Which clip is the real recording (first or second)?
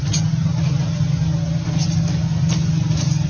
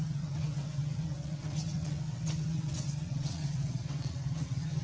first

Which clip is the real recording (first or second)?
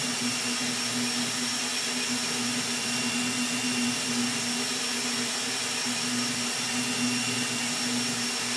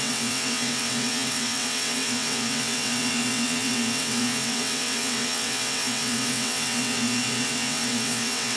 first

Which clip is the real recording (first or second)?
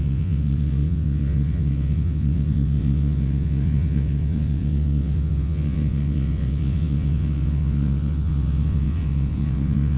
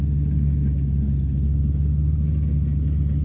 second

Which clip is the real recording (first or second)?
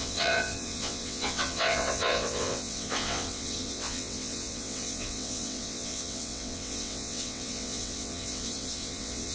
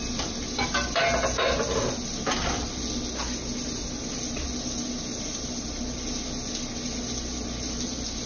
second